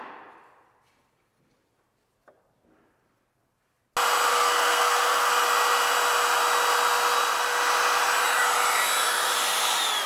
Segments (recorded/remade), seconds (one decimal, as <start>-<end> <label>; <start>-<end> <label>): 0.0-4.3 recorded; 4.3-5.3 remade; 5.3-10.1 recorded